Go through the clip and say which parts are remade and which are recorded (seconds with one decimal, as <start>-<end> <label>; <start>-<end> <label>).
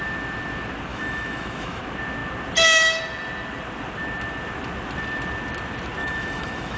0.0-0.9 recorded; 0.9-1.8 remade; 1.8-6.0 recorded; 6.0-6.8 remade